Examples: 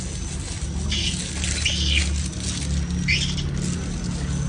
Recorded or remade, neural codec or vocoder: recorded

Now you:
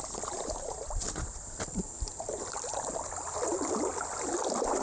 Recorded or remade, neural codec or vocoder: remade, vocoder, BigVGAN v2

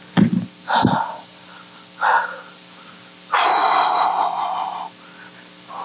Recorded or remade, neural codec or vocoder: recorded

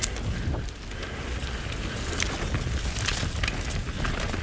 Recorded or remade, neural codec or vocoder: recorded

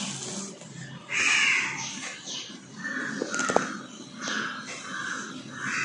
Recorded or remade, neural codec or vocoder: recorded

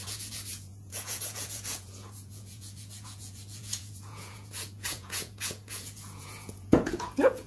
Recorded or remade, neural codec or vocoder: remade, vocoder, Vocos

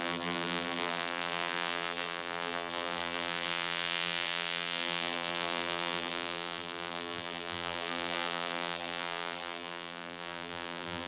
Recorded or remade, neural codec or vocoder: remade, vocoder, BigVGAN v2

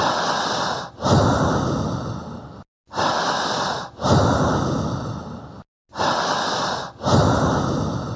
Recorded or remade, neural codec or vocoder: recorded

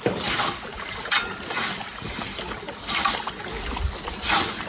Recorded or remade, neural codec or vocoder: recorded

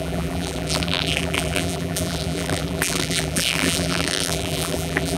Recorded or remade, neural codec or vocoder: remade, vocoder, BigVGAN v2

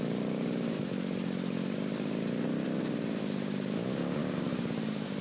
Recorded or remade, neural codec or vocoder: recorded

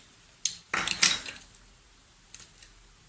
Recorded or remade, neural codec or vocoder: recorded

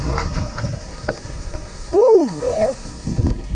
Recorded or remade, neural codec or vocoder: remade, codec, SNAC